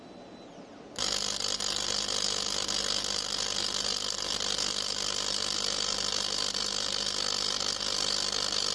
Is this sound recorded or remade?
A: recorded